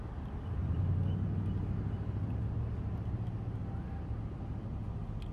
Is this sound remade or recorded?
recorded